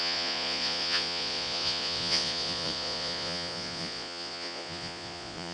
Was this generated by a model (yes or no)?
yes